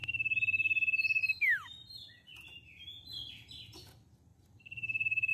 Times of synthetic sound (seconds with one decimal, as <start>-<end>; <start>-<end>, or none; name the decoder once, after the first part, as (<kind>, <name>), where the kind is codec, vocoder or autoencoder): 2.3-3.0 (vocoder, BigVGAN v2); 4.3-5.3